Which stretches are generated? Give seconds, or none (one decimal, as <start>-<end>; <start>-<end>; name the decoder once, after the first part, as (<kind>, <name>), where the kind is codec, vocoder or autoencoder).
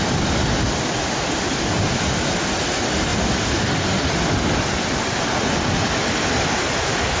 none